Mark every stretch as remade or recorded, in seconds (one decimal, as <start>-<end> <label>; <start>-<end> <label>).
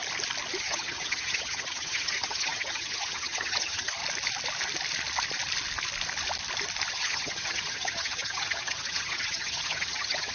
0.0-0.6 recorded; 0.6-4.0 remade; 4.0-6.9 recorded; 6.9-10.3 remade